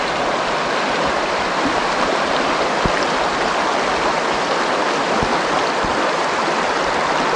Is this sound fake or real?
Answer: real